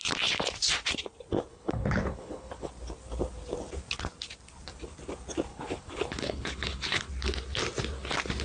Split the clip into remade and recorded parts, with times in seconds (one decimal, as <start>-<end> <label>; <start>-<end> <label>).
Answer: 0.0-1.5 recorded; 1.5-2.7 remade; 2.7-5.5 recorded; 5.5-7.1 remade; 7.1-8.4 recorded